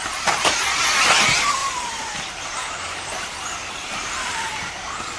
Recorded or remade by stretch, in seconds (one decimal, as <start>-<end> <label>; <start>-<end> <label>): 0.0-1.6 recorded; 1.6-4.7 remade; 4.7-5.2 recorded